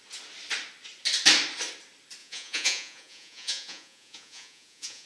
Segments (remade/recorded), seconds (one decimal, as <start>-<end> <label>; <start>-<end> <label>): 0.0-2.2 recorded; 2.2-5.1 remade